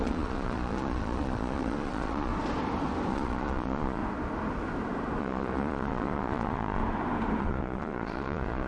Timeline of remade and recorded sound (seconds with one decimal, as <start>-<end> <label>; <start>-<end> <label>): 0.0-2.3 remade; 2.3-3.1 recorded; 3.1-4.0 remade; 4.0-5.2 recorded; 5.2-6.8 remade; 6.8-7.4 recorded; 7.4-8.7 remade